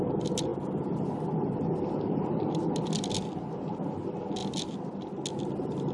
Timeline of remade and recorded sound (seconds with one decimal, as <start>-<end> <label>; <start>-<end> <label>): 0.0-5.9 recorded